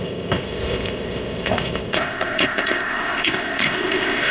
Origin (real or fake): fake